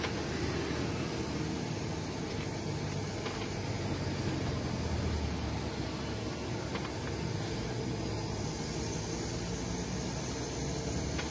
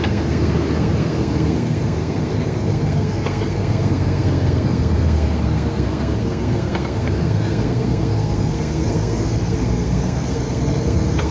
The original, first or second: first